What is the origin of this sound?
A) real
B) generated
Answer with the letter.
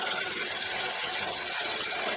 A